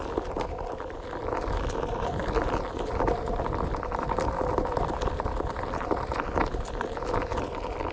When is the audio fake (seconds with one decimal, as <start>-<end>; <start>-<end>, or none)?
none